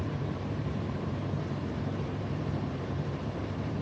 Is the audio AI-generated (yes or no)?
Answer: yes